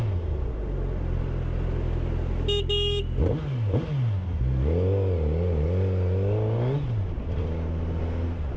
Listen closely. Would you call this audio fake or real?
real